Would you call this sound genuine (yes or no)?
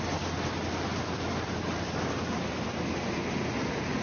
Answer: yes